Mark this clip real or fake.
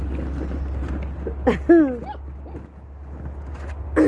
real